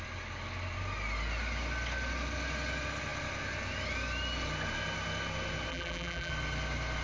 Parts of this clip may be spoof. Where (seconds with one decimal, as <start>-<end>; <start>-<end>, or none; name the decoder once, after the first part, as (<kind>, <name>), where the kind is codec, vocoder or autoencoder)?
5.7-6.3 (vocoder, BigVGAN v2)